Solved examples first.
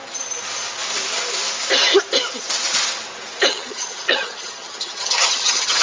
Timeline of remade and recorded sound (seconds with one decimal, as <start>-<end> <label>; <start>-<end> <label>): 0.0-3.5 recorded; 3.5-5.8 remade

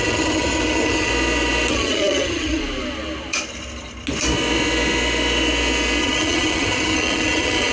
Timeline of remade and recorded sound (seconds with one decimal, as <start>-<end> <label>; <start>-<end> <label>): 0.0-1.1 remade; 1.1-1.7 recorded; 1.7-2.6 remade; 2.6-6.0 recorded; 6.0-7.7 remade

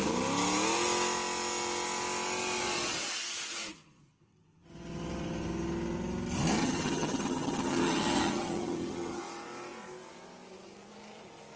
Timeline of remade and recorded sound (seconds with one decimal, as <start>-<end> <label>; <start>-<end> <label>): 0.0-6.6 recorded; 6.6-9.2 remade; 9.2-11.6 recorded

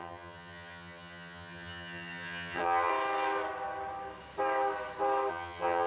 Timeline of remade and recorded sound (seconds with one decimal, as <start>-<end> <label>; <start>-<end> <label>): 0.0-2.9 remade; 2.9-5.3 recorded; 5.3-5.9 remade